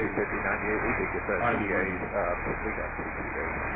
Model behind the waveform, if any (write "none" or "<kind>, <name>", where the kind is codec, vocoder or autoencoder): none